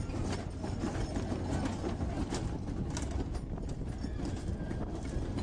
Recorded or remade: recorded